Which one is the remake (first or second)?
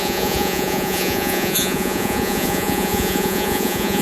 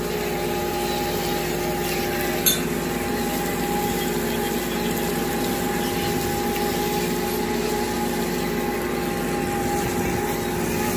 first